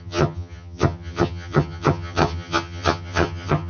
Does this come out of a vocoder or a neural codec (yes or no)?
yes